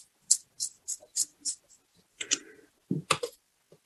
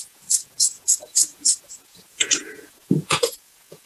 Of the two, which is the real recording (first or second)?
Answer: first